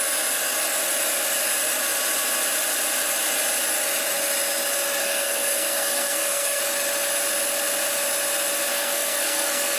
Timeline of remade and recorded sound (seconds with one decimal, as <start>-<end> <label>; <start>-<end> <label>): 0.0-5.0 recorded; 5.0-6.6 remade; 6.6-8.7 recorded; 8.7-9.8 remade